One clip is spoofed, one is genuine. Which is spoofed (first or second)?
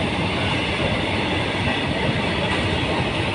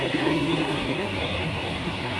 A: second